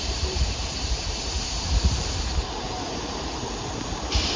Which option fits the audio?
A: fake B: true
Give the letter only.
A